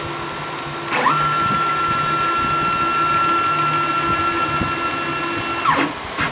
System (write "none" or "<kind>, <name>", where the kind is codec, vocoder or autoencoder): none